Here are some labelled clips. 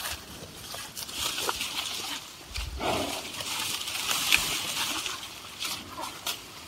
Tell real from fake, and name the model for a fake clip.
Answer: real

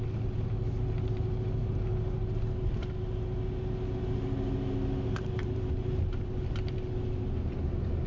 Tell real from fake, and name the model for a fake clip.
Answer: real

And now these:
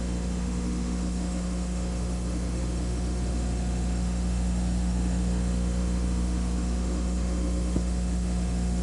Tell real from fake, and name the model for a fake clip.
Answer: fake, autoencoder, DAC-VAE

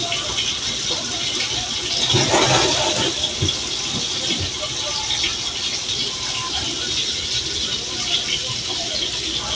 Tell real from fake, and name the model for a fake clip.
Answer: real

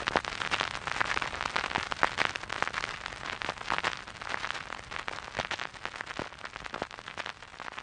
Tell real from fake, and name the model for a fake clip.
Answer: real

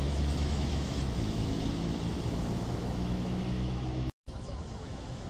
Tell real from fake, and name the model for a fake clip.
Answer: fake, autoencoder, DAC-VAE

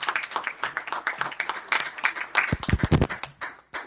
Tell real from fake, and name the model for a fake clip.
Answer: real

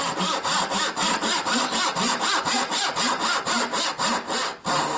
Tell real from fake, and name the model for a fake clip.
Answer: real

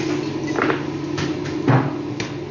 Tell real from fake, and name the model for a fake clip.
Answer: real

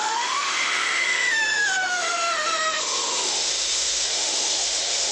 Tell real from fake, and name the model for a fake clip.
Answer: fake, autoencoder, DAC-VAE